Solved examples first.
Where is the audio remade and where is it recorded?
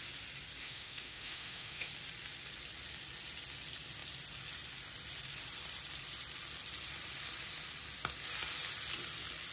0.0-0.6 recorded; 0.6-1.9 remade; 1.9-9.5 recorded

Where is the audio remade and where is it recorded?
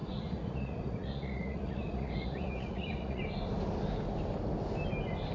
0.0-3.2 remade; 3.2-5.3 recorded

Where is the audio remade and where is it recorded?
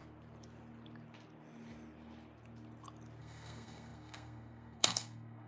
0.0-3.2 recorded; 3.2-5.5 remade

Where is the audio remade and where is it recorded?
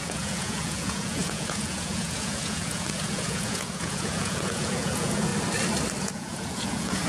0.0-5.3 remade; 5.3-6.0 recorded; 6.0-7.1 remade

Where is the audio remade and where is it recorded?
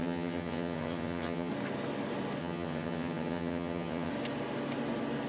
0.0-1.5 remade; 1.5-2.4 recorded; 2.4-4.1 remade; 4.1-5.3 recorded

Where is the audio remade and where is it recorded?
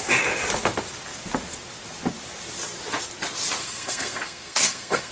0.0-3.6 recorded; 3.6-5.1 remade